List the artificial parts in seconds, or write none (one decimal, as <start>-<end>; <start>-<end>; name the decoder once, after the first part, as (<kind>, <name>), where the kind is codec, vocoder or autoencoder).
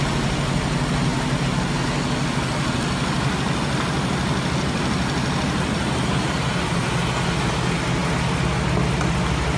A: none